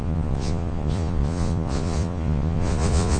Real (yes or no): no